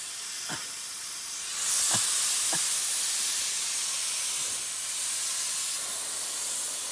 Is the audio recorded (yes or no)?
yes